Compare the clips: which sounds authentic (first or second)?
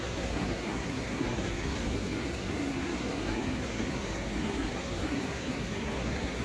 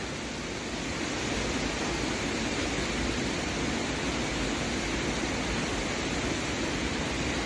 second